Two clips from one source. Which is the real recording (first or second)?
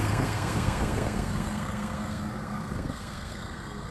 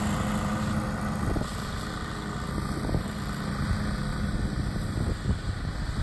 second